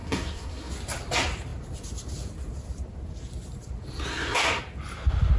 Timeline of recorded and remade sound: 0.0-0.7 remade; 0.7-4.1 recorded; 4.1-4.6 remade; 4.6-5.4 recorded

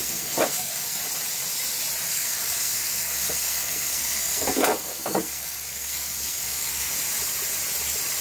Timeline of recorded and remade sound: 0.0-1.0 remade; 1.0-2.1 recorded; 2.1-6.9 remade; 6.9-8.2 recorded

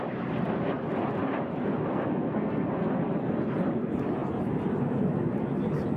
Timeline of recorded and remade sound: 0.0-1.9 recorded; 1.9-2.7 remade; 2.7-6.0 recorded

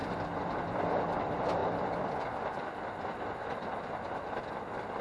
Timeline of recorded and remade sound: 0.0-5.0 recorded

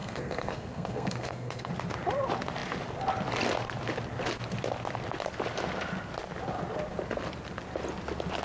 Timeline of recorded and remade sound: 0.0-1.7 remade; 1.7-8.4 recorded